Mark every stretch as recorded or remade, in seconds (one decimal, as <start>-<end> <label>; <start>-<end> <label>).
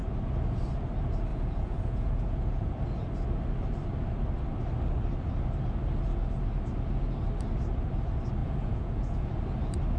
0.0-1.3 recorded; 1.3-2.7 remade; 2.7-8.4 recorded; 8.4-9.3 remade; 9.3-10.0 recorded